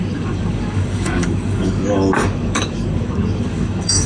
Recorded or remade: remade